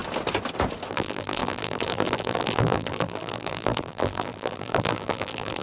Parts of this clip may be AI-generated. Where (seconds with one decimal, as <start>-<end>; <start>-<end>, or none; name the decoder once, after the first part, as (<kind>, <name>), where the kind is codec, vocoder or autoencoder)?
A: 0.9-5.6 (vocoder, BigVGAN v2)